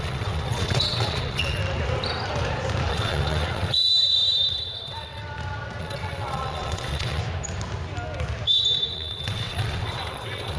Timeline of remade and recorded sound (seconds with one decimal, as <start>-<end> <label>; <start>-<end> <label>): 0.0-1.6 remade; 1.6-2.9 recorded; 2.9-3.9 remade; 3.9-4.5 recorded; 4.5-5.2 remade; 5.2-5.8 recorded; 5.8-7.2 remade; 7.2-8.9 recorded; 8.9-10.6 remade